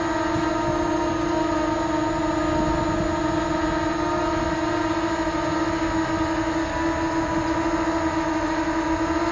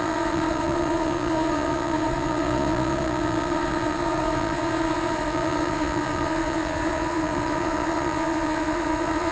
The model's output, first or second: second